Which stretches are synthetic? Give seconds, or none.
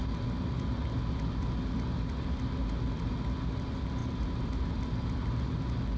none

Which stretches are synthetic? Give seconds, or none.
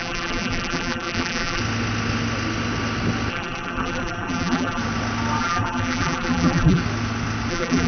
0.0-1.6 (vocoder, BigVGAN v2); 3.3-4.8; 5.4-6.8; 7.5-7.9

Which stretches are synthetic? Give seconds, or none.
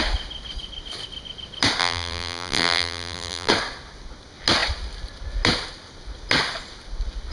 1.8-3.5 (vocoder, BigVGAN v2)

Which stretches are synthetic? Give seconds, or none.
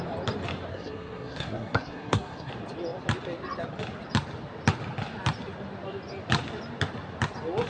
0.7-2.5 (codec, SNAC)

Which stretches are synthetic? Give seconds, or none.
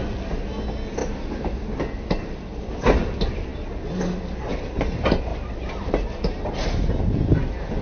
none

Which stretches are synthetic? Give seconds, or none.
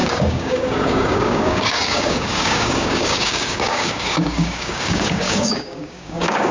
0.0-6.5 (codec, DAC)